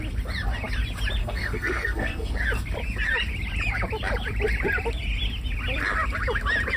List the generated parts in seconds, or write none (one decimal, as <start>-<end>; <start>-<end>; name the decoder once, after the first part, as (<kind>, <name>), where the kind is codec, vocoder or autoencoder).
1.2-2.3 (codec, SNAC)

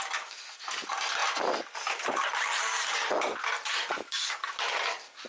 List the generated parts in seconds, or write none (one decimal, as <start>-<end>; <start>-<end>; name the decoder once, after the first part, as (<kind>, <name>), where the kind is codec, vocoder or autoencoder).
none